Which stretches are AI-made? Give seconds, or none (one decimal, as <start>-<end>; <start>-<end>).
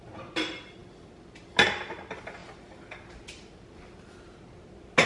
none